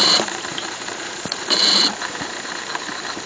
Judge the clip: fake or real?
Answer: fake